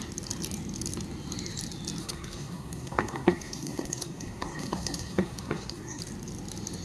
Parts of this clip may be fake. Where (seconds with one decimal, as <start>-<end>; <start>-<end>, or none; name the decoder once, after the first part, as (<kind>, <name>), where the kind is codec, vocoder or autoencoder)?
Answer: 2.0-6.0 (codec, SNAC)